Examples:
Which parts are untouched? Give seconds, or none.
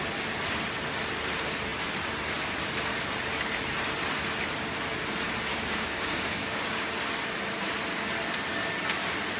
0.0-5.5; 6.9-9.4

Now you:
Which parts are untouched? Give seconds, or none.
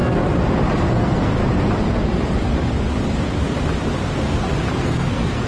0.0-0.9; 1.4-4.7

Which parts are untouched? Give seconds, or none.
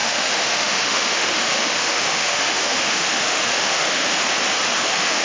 4.0-4.8